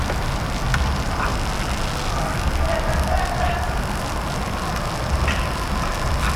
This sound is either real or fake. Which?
real